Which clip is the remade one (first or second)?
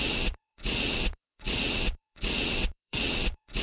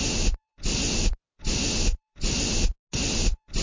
first